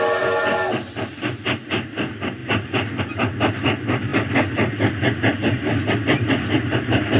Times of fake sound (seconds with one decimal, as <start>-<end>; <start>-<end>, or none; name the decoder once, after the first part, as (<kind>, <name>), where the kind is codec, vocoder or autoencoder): none